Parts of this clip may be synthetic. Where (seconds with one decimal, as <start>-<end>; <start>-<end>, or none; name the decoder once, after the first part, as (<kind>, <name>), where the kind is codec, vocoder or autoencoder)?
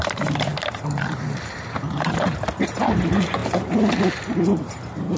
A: 0.0-5.2 (vocoder, BigVGAN v2)